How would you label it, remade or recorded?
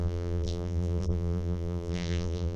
remade